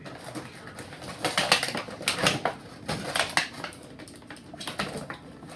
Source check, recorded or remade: recorded